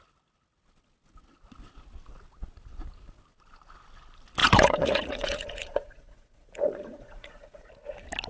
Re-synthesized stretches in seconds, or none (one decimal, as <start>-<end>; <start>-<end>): 4.4-7.7